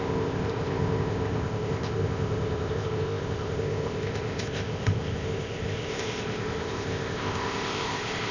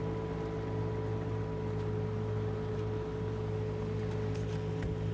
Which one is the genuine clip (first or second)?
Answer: second